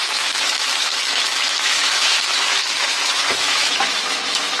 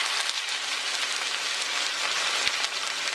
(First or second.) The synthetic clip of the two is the first